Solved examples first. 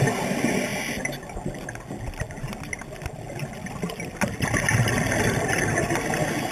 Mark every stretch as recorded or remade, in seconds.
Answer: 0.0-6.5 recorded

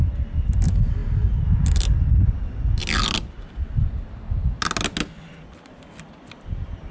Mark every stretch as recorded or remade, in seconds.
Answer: 0.0-6.9 recorded

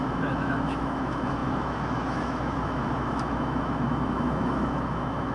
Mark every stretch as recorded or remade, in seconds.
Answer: 0.0-5.3 remade

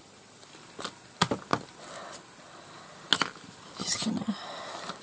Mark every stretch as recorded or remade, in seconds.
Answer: 0.0-3.8 recorded; 3.8-4.3 remade; 4.3-5.0 recorded